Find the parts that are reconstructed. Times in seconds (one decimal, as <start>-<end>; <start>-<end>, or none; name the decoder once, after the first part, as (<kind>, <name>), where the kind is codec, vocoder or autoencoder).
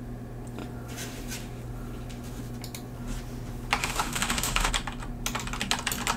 3.8-4.7 (autoencoder, DAC-VAE)